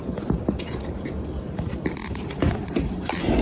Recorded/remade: remade